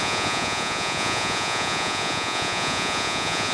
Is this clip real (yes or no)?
no